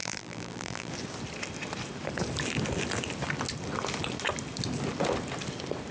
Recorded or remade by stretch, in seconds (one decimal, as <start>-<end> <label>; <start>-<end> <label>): 0.0-0.9 remade; 0.9-5.9 recorded